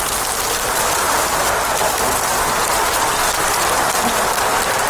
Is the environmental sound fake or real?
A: real